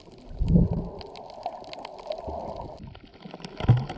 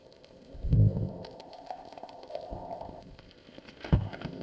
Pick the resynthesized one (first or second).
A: second